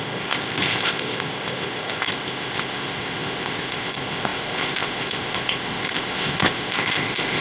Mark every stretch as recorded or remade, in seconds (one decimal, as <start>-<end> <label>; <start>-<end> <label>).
0.0-7.4 remade

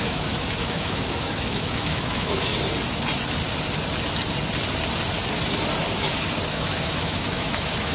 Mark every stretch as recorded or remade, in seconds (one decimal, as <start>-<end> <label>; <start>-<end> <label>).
0.0-2.5 remade; 2.5-6.5 recorded; 6.5-7.9 remade